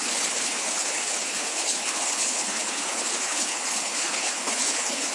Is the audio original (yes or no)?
no